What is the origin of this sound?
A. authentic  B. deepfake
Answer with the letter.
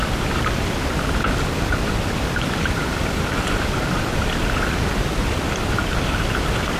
B